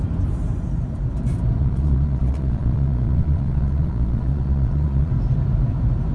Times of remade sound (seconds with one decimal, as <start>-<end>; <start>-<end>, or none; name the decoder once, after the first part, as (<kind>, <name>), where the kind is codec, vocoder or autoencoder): 1.6-5.1 (vocoder, Vocos)